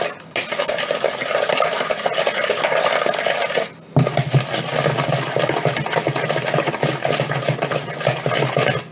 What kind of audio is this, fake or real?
real